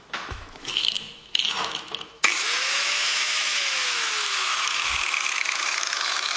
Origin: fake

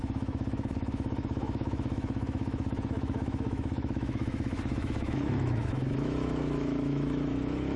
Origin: fake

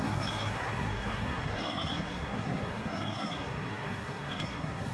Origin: fake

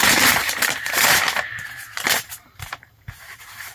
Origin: fake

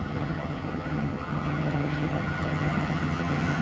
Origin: fake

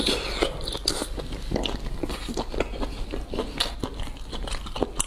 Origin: real